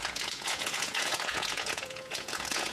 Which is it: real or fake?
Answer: fake